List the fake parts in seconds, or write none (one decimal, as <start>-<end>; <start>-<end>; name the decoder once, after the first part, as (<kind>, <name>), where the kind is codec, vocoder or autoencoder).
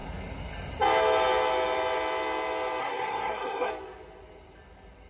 2.8-3.7 (codec, SNAC)